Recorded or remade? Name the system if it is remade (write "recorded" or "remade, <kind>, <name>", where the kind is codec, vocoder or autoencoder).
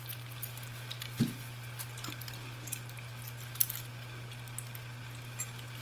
recorded